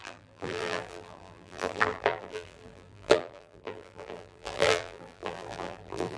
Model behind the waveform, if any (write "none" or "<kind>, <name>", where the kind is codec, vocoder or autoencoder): vocoder, BigVGAN v2